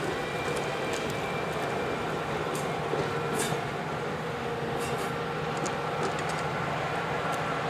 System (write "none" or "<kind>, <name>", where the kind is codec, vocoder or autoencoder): none